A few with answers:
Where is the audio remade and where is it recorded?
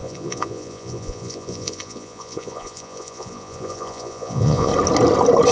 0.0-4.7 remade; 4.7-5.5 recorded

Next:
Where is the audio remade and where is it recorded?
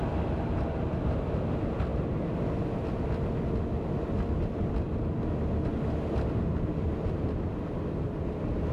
0.0-8.7 recorded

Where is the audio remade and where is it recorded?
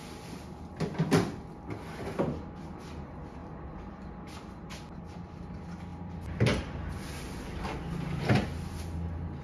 0.0-3.4 recorded; 3.4-5.0 remade; 5.0-5.9 recorded; 5.9-8.2 remade; 8.2-9.4 recorded